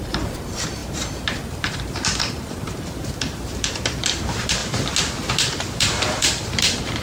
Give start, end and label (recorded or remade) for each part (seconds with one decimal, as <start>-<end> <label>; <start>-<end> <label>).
0.0-4.6 remade; 4.6-5.3 recorded; 5.3-7.0 remade